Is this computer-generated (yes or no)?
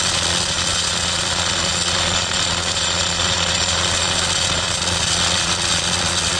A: yes